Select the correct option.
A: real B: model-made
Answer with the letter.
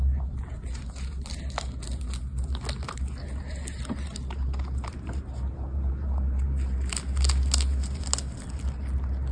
A